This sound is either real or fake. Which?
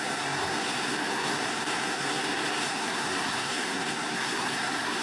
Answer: fake